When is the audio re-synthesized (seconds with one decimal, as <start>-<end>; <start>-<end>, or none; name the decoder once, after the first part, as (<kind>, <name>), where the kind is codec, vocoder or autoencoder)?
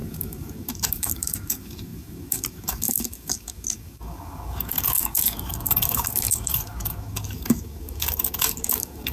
0.0-9.1 (codec, DAC)